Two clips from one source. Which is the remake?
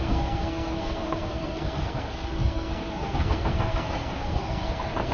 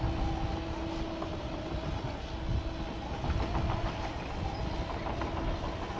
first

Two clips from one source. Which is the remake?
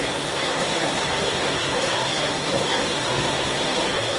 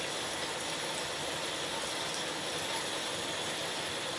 first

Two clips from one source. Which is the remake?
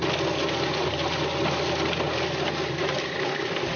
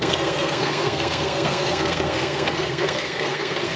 second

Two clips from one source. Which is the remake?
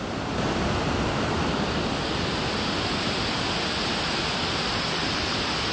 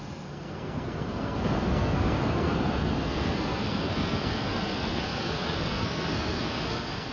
second